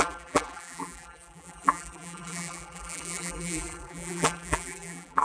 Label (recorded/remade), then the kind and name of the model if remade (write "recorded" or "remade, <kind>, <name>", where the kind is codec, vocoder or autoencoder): remade, vocoder, BigVGAN v2